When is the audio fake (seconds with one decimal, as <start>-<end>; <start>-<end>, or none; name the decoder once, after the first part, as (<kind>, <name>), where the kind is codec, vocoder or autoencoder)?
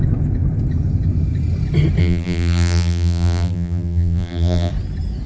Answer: 2.0-4.7 (vocoder, BigVGAN v2)